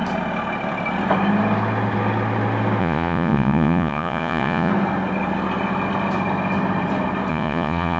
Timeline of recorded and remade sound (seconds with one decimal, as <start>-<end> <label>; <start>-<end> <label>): 0.0-2.8 recorded; 2.8-4.7 remade; 4.7-7.3 recorded; 7.3-8.0 remade